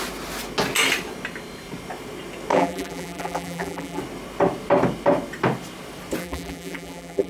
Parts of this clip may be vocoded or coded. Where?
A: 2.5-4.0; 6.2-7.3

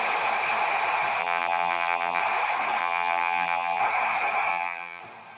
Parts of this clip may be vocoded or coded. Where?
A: 1.2-2.2; 2.8-3.8; 4.5-5.0

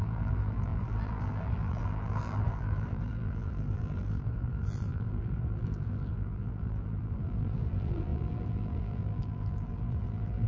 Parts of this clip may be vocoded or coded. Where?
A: 0.0-10.5

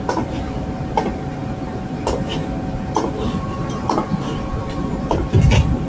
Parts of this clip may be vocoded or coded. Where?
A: 0.0-5.9